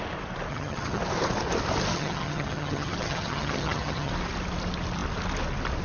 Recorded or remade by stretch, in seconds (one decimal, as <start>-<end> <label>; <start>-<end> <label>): 0.0-0.5 recorded; 0.5-1.0 remade; 1.0-1.9 recorded; 1.9-4.1 remade; 4.1-5.8 recorded